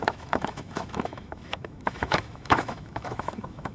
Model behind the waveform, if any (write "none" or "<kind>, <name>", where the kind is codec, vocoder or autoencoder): autoencoder, DAC-VAE